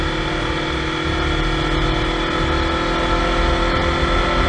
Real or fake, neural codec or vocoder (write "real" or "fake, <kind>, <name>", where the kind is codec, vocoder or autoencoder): real